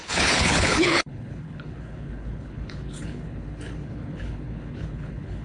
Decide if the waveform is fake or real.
fake